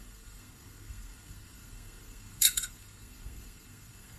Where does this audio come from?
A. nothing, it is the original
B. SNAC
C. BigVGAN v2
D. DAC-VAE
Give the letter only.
B